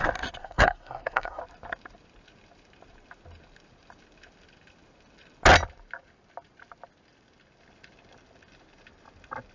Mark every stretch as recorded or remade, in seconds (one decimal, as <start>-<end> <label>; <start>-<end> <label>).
0.0-0.4 recorded; 0.4-1.4 remade; 1.4-9.5 recorded